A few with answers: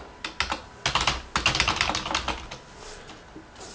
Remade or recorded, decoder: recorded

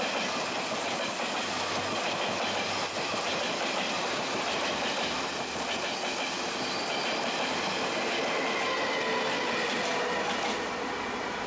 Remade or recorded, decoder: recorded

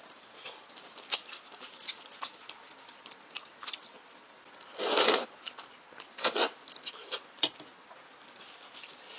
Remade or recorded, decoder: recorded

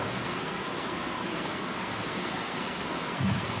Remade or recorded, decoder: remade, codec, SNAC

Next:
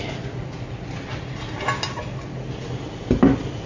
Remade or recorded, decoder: recorded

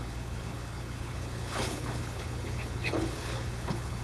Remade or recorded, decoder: remade, codec, HILCodec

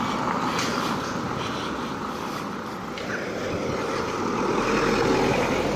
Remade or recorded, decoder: recorded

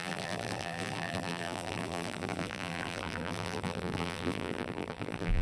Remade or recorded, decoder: remade, vocoder, BigVGAN v2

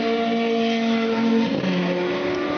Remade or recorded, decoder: recorded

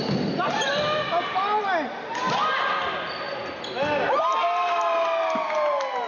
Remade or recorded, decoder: recorded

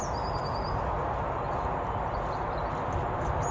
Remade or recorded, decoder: recorded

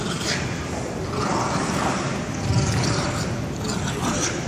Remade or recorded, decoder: recorded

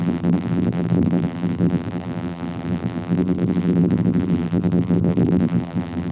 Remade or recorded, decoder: remade, vocoder, BigVGAN v2